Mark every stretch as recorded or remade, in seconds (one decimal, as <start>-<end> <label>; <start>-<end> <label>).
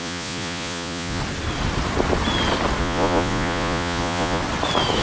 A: 0.0-1.2 remade; 1.2-2.8 recorded; 2.8-4.4 remade; 4.4-5.0 recorded